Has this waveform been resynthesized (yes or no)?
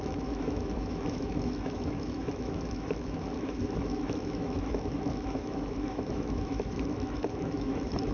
yes